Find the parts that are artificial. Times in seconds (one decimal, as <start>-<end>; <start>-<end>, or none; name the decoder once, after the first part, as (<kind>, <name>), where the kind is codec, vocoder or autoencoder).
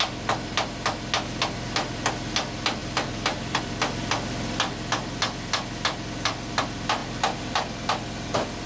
2.8-3.6 (vocoder, BigVGAN v2)